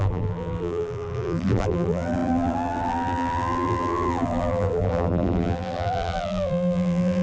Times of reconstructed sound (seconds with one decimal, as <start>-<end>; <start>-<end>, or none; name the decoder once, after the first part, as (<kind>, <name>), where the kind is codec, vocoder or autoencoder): 0.0-7.2 (vocoder, BigVGAN v2)